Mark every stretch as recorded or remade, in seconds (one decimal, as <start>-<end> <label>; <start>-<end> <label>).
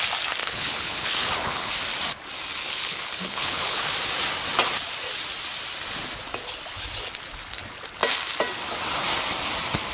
0.0-0.4 recorded; 0.4-1.7 remade; 1.7-2.6 recorded; 2.6-3.9 remade; 3.9-9.9 recorded